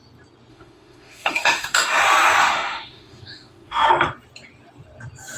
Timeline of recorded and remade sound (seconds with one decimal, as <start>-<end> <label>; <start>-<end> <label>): 0.0-0.5 recorded; 0.5-2.0 remade; 2.0-2.4 recorded; 2.4-3.9 remade; 3.9-5.4 recorded

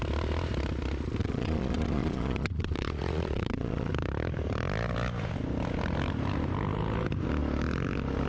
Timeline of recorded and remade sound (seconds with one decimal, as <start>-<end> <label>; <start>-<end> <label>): 0.0-1.2 recorded; 1.2-3.9 remade; 3.9-8.3 recorded

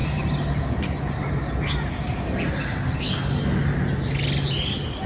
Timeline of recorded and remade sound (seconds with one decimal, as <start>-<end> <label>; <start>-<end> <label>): 0.0-5.1 recorded